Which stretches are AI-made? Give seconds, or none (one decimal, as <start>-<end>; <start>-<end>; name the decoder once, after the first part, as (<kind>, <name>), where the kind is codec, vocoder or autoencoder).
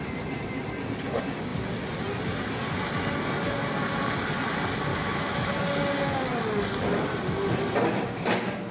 4.9-5.5 (autoencoder, DAC-VAE)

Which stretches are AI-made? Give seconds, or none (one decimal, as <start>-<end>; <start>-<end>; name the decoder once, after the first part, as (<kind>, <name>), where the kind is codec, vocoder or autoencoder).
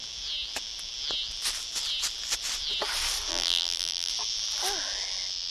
3.3-4.1 (vocoder, BigVGAN v2)